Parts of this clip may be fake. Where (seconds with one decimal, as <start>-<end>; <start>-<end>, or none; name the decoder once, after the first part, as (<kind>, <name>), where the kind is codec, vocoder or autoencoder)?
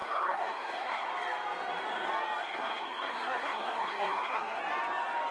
0.0-1.1 (codec, SNAC); 2.4-4.6